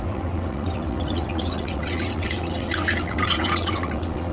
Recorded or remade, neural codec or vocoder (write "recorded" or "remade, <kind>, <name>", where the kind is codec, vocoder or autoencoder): remade, vocoder, WaveNeXt